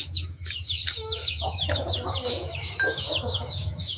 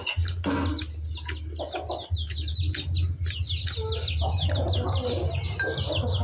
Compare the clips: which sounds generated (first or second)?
first